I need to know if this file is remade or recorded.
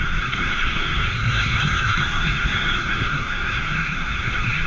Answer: remade